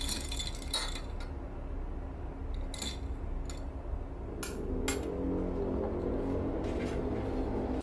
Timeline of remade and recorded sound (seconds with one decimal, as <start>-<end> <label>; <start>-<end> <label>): 0.0-7.8 recorded